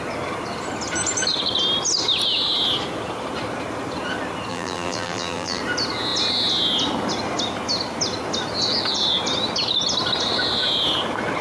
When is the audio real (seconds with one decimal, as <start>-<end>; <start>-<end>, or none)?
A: 0.0-4.5; 5.6-11.4